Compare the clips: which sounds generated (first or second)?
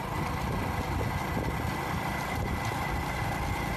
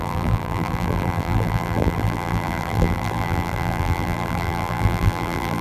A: second